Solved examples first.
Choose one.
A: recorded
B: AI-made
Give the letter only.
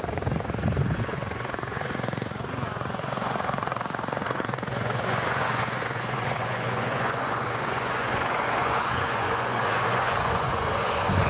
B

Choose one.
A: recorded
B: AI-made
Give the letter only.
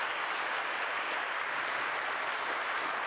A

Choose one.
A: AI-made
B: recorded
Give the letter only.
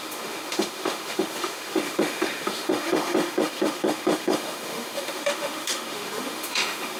A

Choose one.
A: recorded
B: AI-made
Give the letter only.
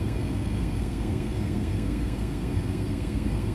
B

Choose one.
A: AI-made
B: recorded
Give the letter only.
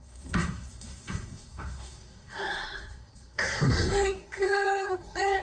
A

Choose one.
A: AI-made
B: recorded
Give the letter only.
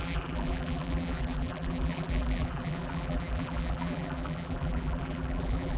A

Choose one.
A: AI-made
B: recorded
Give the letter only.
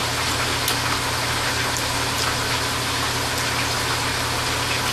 B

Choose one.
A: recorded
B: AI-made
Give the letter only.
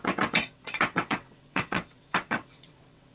B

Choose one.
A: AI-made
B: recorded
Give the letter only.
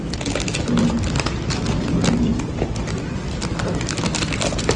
B